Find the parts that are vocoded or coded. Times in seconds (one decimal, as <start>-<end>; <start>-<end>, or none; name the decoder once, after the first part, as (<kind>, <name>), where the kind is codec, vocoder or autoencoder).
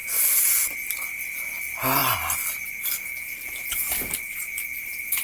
none